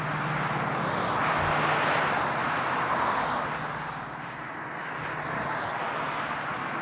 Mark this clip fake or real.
real